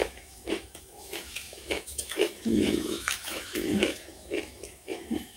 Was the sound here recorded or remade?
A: remade